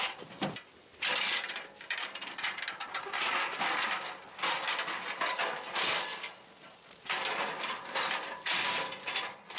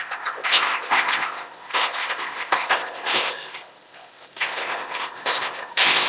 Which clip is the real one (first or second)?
first